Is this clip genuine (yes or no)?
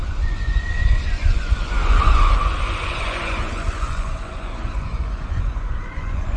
no